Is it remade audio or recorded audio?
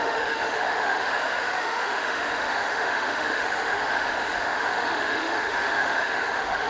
remade